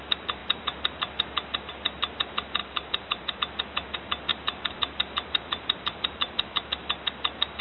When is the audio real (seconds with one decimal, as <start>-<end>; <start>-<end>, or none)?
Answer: 0.0-2.6; 3.4-4.3; 6.6-7.6